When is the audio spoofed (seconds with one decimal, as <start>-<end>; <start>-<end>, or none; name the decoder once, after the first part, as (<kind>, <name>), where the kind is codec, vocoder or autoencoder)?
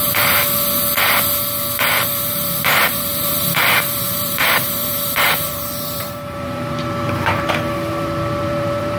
0.0-0.4 (vocoder, BigVGAN v2); 1.9-9.0